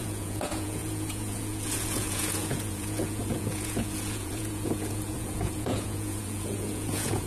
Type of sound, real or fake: fake